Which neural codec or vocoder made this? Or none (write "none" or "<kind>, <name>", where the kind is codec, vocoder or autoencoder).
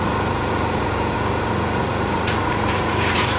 vocoder, Vocos